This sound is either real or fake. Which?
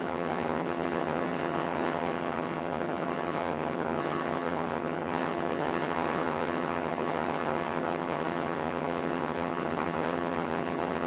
fake